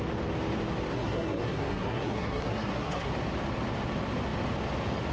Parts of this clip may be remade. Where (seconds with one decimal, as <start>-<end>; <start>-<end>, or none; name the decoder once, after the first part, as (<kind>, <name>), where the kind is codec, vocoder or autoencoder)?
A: 0.9-3.1 (codec, SNAC)